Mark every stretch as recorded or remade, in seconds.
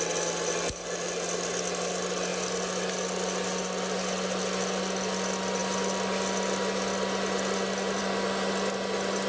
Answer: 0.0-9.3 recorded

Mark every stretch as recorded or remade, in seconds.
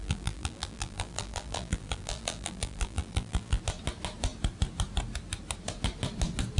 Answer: 0.0-3.6 remade; 3.6-6.6 recorded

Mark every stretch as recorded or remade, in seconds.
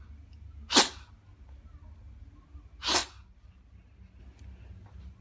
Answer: 0.0-5.2 recorded